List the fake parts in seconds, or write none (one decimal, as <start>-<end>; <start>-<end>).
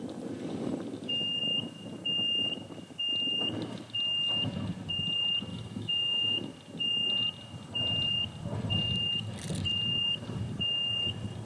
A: 5.5-6.4